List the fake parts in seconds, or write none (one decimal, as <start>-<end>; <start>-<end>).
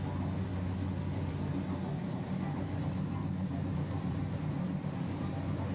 1.9-5.3